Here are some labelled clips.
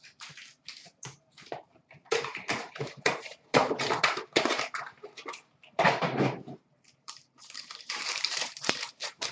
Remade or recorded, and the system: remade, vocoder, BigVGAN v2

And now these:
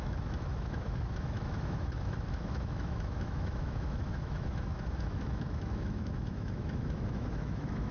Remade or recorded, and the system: remade, autoencoder, DAC-VAE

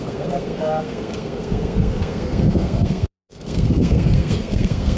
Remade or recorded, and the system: remade, codec, SNAC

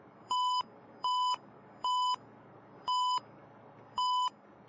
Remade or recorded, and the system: remade, codec, DAC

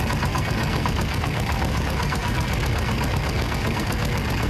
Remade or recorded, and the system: remade, codec, SNAC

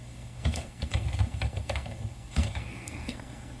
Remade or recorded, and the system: remade, codec, SNAC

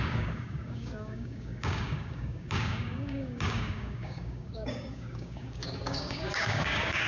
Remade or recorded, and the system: remade, codec, DAC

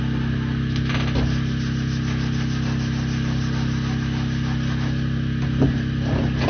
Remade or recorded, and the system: recorded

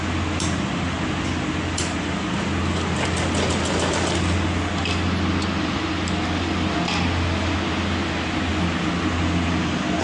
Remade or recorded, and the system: recorded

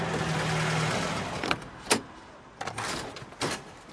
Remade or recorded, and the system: recorded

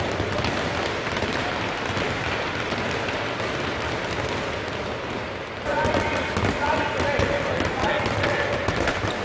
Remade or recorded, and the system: recorded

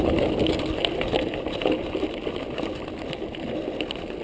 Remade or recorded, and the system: recorded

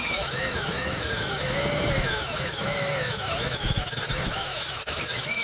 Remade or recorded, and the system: remade, autoencoder, DAC-VAE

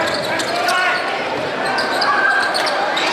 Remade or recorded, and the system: recorded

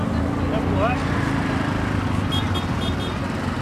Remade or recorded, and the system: recorded